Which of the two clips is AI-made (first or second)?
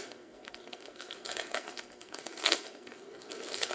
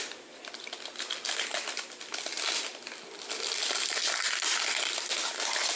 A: first